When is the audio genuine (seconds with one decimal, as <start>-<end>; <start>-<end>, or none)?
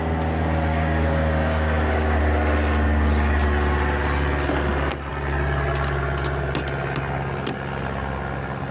0.0-0.7; 2.2-8.7